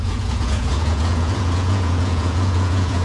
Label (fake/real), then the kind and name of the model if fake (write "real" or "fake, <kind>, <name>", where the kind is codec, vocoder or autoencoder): fake, vocoder, Vocos